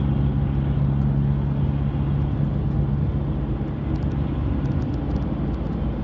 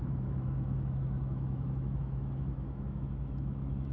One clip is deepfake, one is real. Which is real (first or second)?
first